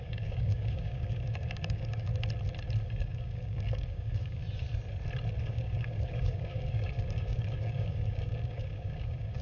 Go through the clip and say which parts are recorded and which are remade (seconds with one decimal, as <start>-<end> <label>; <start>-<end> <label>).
0.0-2.1 remade; 2.1-2.8 recorded; 2.8-4.4 remade; 4.4-5.4 recorded; 5.4-9.4 remade